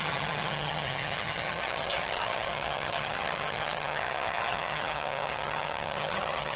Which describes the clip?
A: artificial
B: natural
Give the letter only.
A